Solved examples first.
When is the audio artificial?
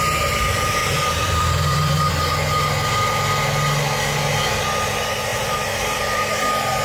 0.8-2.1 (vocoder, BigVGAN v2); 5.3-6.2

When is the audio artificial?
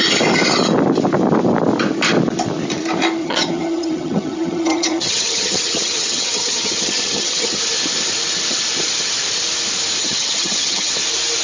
3.2-7.6 (vocoder, HiFi-GAN); 10.0-10.9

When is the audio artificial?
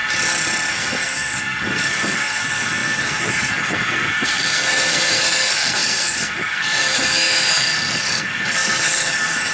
0.7-9.5 (codec, SNAC)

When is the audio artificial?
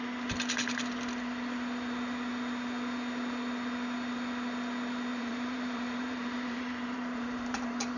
5.1-8.0 (vocoder, BigVGAN v2)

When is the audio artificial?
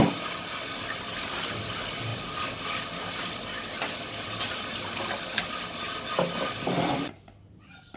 none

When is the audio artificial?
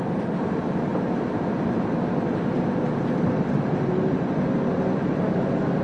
0.0-5.8 (vocoder, BigVGAN v2)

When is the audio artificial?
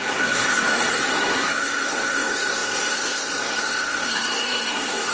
0.0-5.1 (codec, SNAC)